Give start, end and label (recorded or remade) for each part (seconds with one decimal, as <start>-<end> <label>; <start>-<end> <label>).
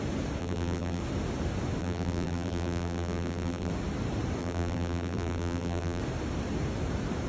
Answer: 0.0-0.4 recorded; 0.4-1.0 remade; 1.0-1.8 recorded; 1.8-3.7 remade; 3.7-4.4 recorded; 4.4-6.0 remade; 6.0-7.3 recorded